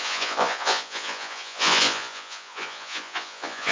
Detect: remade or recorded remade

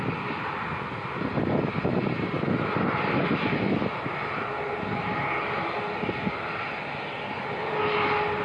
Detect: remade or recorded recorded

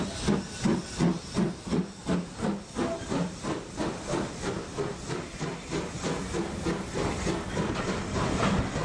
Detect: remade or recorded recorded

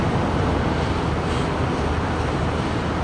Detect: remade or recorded recorded